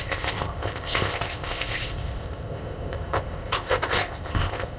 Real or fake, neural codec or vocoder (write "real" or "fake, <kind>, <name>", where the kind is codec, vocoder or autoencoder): fake, codec, ZipCodec